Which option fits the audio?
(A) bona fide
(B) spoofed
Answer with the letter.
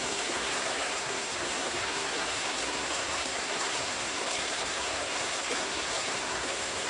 B